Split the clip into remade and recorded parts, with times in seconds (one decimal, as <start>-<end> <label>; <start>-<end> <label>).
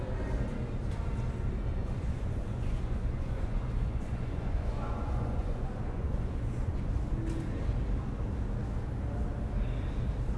0.0-1.8 recorded; 1.8-6.9 remade; 6.9-10.4 recorded